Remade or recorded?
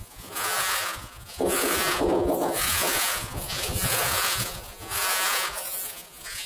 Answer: remade